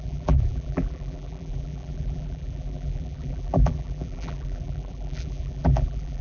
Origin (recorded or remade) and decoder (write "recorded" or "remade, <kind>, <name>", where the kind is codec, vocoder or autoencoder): remade, vocoder, BigVGAN v2